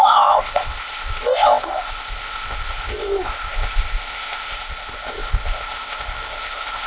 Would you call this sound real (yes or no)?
no